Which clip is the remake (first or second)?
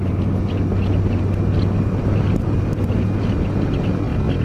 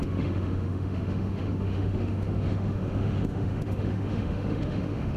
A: second